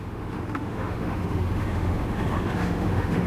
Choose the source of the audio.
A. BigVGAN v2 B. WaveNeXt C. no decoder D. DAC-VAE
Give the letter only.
D